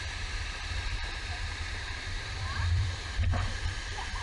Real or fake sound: fake